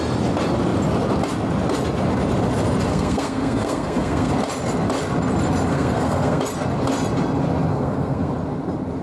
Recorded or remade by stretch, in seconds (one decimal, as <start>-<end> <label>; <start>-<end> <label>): 0.0-2.9 recorded; 2.9-4.3 remade; 4.3-5.7 recorded; 5.7-6.4 remade; 6.4-7.7 recorded; 7.7-8.3 remade; 8.3-9.0 recorded